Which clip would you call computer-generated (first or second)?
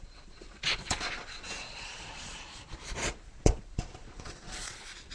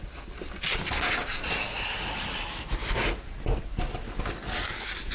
first